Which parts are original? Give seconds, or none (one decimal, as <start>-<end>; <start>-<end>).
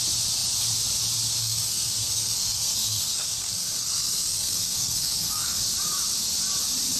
0.0-1.4; 5.6-7.0